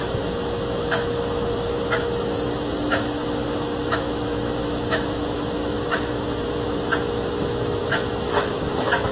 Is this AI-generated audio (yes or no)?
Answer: yes